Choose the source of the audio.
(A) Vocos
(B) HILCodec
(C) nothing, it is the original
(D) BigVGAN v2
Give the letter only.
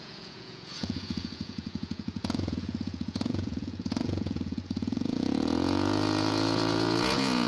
A